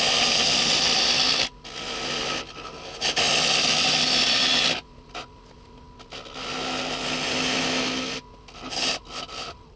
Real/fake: real